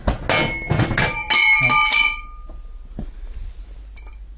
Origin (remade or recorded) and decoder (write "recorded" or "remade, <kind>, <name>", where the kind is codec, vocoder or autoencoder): recorded